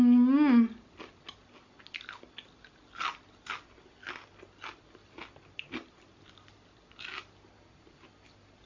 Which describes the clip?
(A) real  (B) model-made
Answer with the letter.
A